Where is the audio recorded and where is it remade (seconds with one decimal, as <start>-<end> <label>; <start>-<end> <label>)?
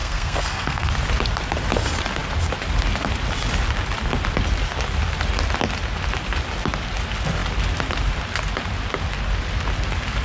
0.0-0.9 remade; 0.9-10.2 recorded